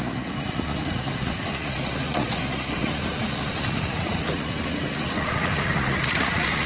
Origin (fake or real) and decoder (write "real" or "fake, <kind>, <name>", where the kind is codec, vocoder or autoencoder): fake, vocoder, Vocos